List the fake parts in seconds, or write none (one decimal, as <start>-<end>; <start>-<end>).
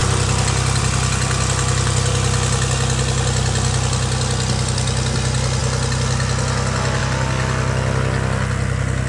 none